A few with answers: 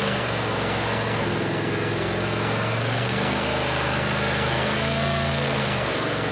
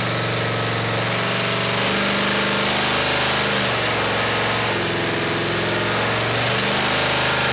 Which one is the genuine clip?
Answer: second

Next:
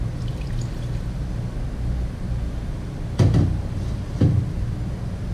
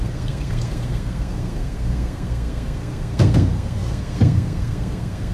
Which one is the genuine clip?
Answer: first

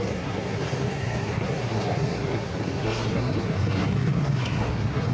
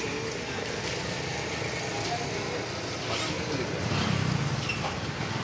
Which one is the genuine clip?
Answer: second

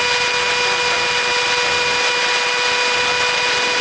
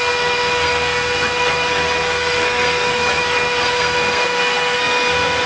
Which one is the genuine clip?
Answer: first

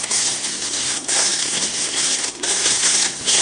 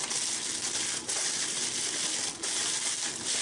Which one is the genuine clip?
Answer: second